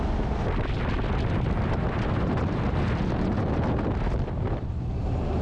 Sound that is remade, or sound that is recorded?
recorded